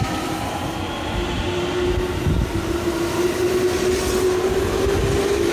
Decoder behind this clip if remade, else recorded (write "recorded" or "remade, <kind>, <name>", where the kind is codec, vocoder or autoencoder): recorded